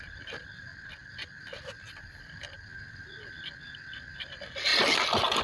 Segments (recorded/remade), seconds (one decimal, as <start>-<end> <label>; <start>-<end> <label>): 0.0-5.4 recorded